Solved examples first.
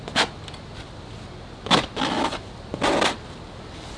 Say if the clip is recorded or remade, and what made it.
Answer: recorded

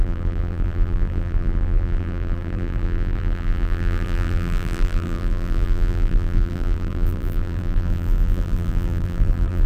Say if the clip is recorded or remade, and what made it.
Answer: remade, vocoder, BigVGAN v2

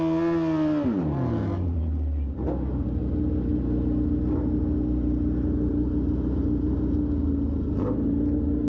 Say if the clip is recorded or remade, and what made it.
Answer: recorded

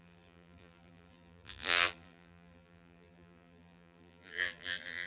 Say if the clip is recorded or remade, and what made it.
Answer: remade, vocoder, BigVGAN v2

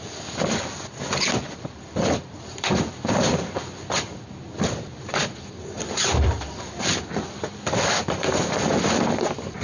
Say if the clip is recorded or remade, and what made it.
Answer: remade, vocoder, BigVGAN v2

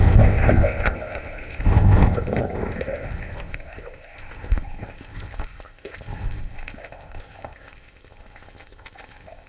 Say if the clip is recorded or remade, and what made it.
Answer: remade, codec, ZipCodec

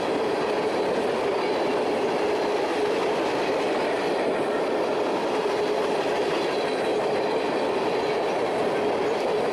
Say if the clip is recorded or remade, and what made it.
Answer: remade, vocoder, BigVGAN v2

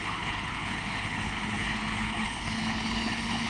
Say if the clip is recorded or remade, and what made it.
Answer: remade, codec, HILCodec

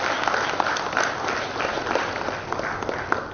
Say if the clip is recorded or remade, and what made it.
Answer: recorded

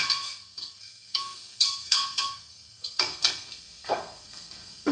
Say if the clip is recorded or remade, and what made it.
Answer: remade, codec, SNAC